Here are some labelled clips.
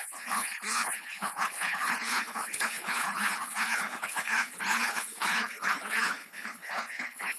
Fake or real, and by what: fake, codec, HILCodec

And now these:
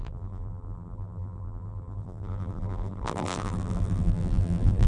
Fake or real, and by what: fake, vocoder, BigVGAN v2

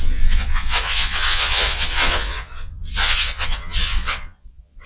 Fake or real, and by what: fake, vocoder, Vocos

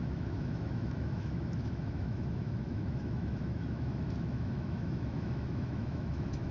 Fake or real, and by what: fake, autoencoder, DAC-VAE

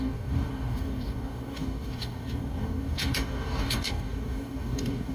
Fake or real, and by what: fake, codec, DAC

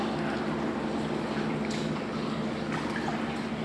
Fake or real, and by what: real